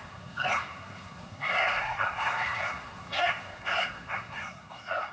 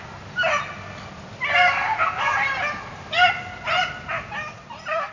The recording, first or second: second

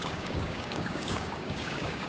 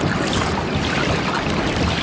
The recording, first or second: second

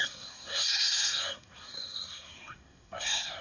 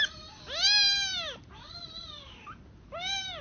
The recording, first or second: second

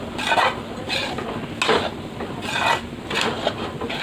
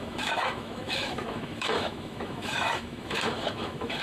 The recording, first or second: first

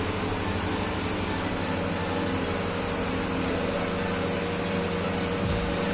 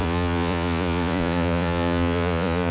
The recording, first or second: first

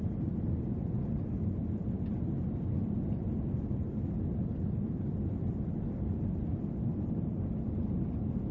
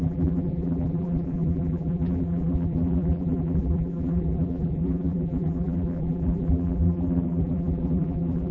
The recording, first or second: first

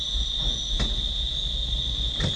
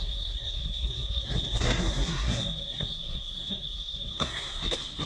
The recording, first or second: first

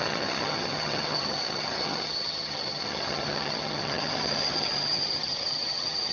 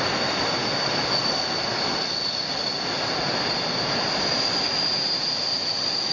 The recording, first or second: second